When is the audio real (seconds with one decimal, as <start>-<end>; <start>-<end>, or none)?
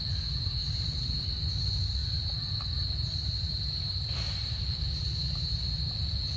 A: 0.0-0.6; 1.2-2.0; 5.8-6.4